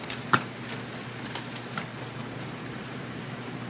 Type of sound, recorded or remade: recorded